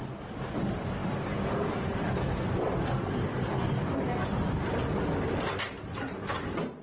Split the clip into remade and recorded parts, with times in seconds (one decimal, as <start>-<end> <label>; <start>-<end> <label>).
0.0-6.8 recorded